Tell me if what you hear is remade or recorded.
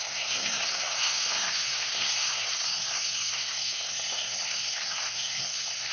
remade